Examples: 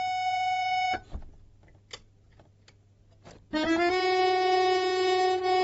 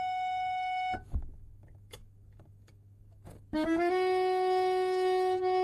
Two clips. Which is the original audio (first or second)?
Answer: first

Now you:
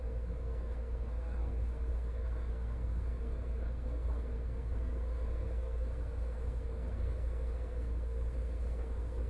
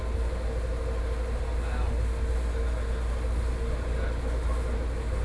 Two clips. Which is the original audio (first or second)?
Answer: second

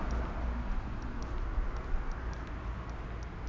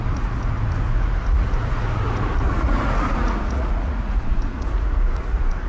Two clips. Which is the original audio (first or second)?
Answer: first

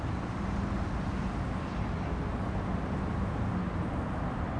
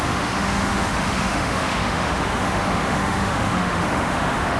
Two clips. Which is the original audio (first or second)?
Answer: first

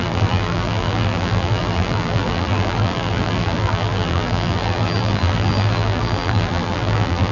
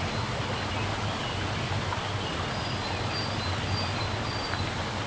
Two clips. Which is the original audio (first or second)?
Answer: second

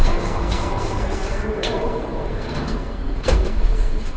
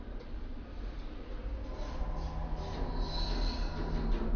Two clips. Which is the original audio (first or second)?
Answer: second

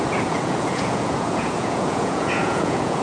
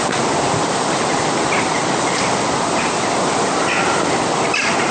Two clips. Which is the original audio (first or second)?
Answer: second